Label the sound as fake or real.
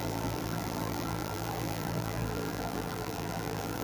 fake